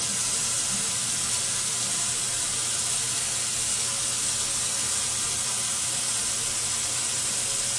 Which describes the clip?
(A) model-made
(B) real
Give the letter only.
B